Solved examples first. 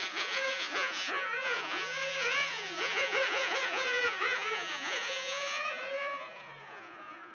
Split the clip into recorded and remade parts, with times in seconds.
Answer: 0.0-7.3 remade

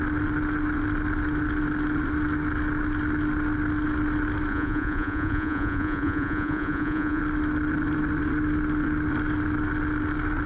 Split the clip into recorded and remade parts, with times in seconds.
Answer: 0.0-4.5 recorded; 4.5-7.2 remade; 7.2-10.5 recorded

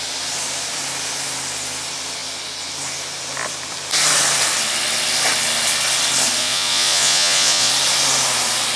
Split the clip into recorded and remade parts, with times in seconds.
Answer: 0.0-6.4 recorded; 6.4-7.7 remade; 7.7-8.8 recorded

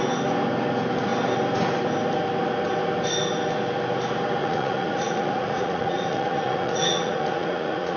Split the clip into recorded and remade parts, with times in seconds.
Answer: 0.0-4.4 recorded; 4.4-8.0 remade

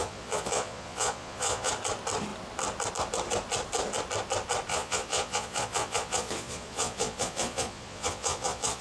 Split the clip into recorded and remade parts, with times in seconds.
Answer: 0.0-1.7 remade; 1.7-4.7 recorded; 4.7-8.8 remade

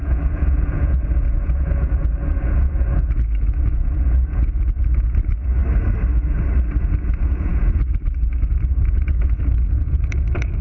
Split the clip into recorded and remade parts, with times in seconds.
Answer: 0.0-5.6 remade; 5.6-6.8 recorded; 6.8-10.6 remade